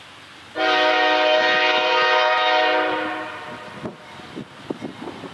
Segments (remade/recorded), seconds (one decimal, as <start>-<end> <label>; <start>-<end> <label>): 0.0-5.3 recorded